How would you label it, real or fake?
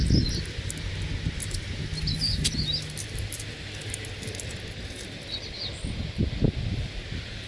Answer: real